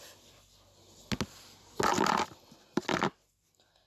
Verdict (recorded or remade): recorded